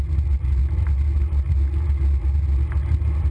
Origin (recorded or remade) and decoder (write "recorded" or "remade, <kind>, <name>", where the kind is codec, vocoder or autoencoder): recorded